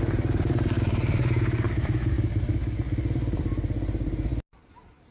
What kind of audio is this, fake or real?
real